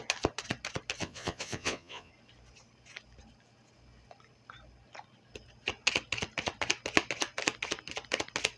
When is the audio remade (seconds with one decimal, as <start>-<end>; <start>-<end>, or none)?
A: 1.0-2.1